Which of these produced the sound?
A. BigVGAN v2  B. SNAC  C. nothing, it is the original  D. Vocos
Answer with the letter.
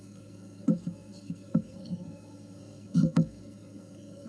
B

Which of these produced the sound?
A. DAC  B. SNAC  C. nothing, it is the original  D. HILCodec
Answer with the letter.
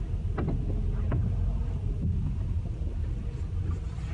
C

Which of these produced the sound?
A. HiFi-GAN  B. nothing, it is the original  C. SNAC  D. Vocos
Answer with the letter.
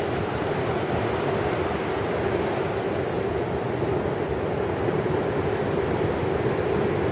B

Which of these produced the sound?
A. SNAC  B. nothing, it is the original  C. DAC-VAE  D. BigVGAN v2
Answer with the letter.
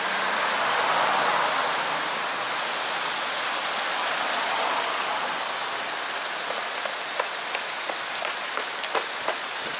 B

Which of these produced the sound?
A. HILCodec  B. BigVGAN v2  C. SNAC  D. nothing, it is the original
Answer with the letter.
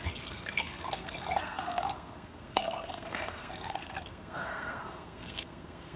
C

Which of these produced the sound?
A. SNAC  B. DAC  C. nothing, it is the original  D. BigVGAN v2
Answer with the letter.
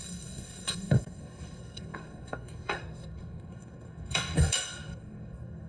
A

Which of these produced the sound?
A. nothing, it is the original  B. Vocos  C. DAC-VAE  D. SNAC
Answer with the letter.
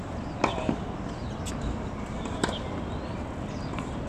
A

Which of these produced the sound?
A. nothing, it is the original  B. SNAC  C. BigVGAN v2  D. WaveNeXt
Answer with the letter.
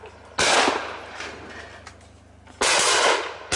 A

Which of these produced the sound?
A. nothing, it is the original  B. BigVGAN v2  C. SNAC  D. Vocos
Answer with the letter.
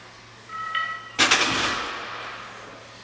A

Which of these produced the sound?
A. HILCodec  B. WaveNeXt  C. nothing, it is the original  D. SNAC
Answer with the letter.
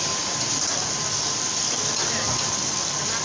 C